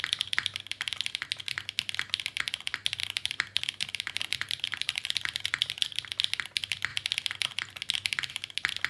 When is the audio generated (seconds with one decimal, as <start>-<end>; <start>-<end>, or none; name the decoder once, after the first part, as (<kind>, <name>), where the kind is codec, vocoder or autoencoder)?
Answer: 3.0-5.6 (vocoder, BigVGAN v2)